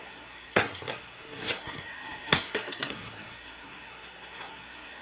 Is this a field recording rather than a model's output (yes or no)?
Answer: no